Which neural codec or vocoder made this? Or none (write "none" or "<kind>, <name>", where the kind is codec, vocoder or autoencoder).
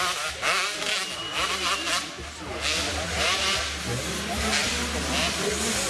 none